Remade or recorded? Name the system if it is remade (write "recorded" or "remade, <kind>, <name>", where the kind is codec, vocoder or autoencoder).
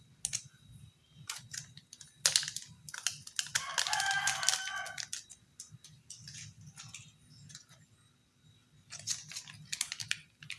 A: recorded